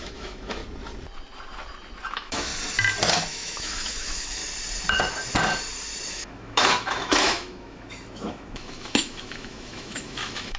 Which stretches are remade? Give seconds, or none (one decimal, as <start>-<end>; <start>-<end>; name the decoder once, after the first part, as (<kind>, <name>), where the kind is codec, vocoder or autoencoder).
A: 0.0-0.6 (autoencoder, DAC-VAE); 2.1-2.5; 3.3-4.4; 6.1-10.6